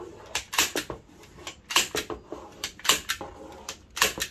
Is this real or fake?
real